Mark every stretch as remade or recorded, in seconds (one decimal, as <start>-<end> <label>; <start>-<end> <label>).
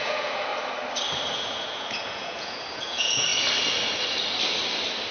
0.0-0.5 remade; 0.5-1.3 recorded; 1.3-3.3 remade; 3.3-5.1 recorded